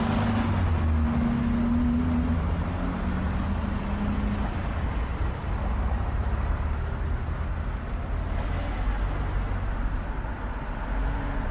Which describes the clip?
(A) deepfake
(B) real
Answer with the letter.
B